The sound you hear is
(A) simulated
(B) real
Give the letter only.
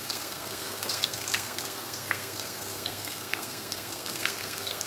A